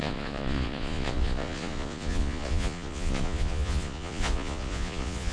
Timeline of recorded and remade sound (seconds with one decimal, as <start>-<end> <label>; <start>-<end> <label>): 0.0-5.3 remade